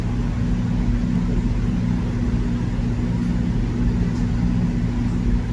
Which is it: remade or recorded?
recorded